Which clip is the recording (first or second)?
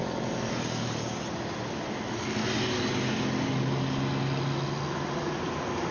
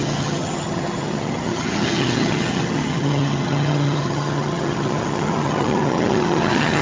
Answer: first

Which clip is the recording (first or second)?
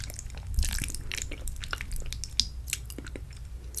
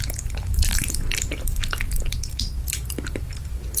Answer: first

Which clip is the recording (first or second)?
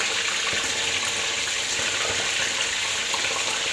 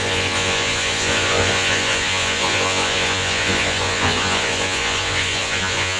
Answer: first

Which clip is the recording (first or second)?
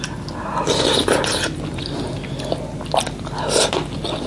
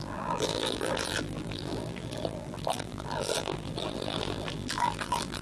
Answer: first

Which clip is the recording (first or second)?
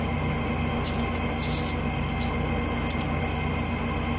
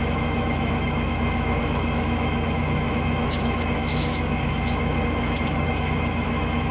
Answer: first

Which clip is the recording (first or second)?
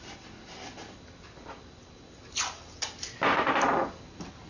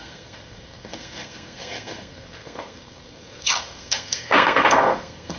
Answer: first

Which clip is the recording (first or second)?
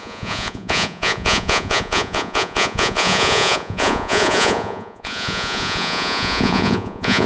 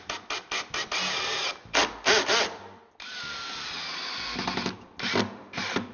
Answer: second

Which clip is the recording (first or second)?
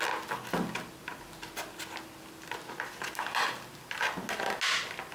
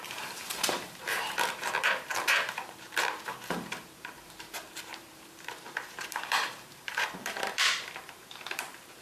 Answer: first